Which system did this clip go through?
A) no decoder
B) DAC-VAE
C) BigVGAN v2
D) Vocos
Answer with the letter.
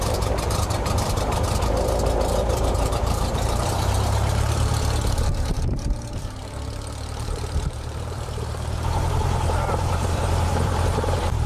C